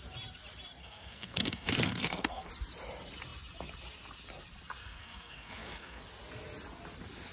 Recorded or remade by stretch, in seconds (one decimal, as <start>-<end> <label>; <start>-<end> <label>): 0.0-0.8 recorded; 0.8-2.5 remade; 2.5-4.8 recorded; 4.8-6.0 remade; 6.0-7.3 recorded